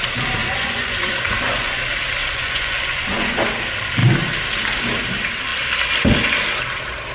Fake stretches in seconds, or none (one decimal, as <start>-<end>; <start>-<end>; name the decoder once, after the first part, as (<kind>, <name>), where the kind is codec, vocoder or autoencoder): 0.4-1.8 (vocoder, Vocos); 2.2-3.4